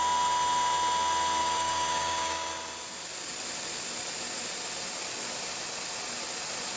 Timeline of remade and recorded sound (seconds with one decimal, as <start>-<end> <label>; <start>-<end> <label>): 0.0-1.4 recorded; 1.4-2.5 remade; 2.5-6.8 recorded